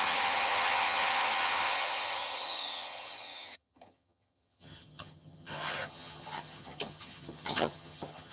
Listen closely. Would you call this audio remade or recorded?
remade